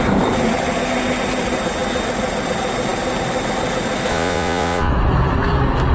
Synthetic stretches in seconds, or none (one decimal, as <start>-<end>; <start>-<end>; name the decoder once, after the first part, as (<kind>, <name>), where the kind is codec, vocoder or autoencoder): 4.1-4.9 (vocoder, Vocos)